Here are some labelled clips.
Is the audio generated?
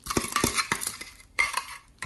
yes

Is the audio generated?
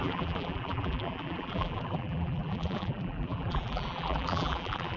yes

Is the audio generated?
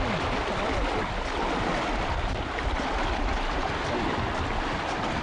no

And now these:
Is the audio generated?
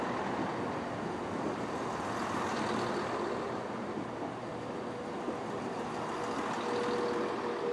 no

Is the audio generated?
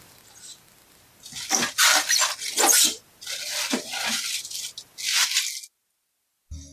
no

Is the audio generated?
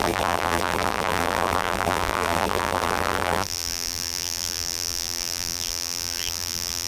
yes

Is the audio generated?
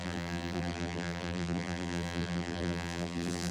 yes